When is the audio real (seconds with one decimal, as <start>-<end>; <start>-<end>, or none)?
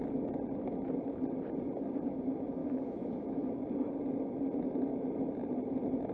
0.0-2.6; 3.5-6.1